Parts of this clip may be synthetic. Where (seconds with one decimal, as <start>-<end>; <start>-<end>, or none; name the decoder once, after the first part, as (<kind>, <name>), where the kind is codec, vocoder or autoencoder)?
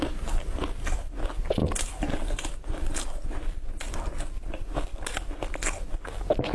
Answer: none